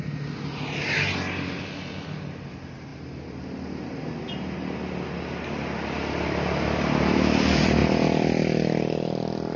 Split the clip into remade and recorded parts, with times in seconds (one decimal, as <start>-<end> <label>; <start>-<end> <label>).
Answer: 0.0-7.8 remade; 7.8-9.6 recorded